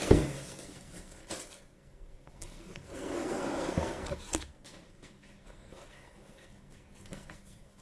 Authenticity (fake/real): fake